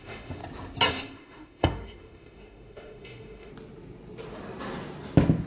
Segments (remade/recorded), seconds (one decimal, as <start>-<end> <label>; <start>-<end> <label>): 0.0-0.4 remade; 0.4-0.9 recorded; 0.9-3.5 remade; 3.5-5.5 recorded